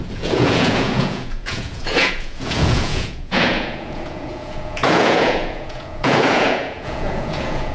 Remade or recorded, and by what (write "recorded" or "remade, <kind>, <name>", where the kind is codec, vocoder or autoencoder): remade, vocoder, Vocos